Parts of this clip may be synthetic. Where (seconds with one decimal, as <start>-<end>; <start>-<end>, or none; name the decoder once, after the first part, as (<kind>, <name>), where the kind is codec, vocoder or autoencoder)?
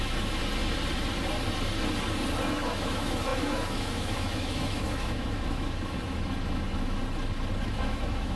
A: 0.0-0.4 (autoencoder, DAC-VAE); 2.5-7.0; 7.6-8.4